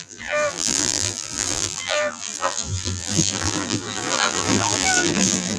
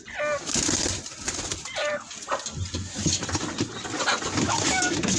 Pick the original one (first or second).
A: second